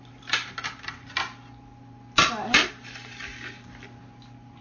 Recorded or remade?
recorded